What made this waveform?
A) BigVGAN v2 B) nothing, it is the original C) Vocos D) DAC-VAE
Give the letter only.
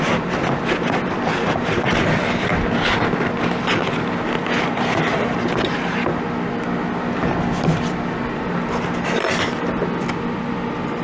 B